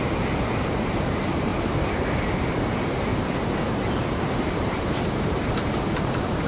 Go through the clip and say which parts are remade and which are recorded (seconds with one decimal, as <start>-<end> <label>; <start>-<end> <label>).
0.0-0.9 recorded; 0.9-1.5 remade; 1.5-2.2 recorded; 2.2-3.1 remade; 3.1-4.2 recorded; 4.2-6.5 remade